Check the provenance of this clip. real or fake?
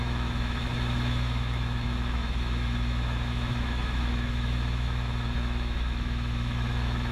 fake